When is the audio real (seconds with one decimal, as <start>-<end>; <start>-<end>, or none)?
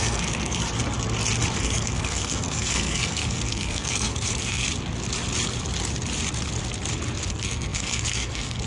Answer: 0.6-1.6; 4.6-7.3